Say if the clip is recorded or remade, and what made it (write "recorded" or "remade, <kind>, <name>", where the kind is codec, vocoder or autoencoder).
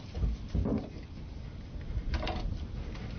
recorded